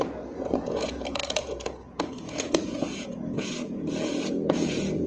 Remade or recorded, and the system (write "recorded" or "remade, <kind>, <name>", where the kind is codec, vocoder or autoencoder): remade, vocoder, Vocos